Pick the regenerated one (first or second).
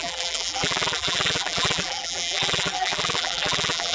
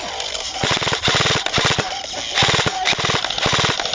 first